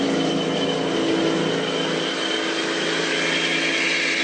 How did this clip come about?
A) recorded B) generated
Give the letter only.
A